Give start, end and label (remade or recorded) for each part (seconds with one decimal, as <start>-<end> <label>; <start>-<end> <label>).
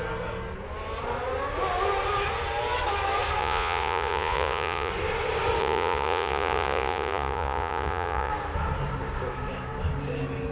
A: 0.0-3.4 recorded; 3.4-4.9 remade; 4.9-5.6 recorded; 5.6-8.3 remade; 8.3-10.5 recorded